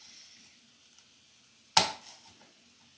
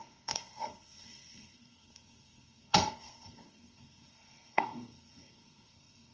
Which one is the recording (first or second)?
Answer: first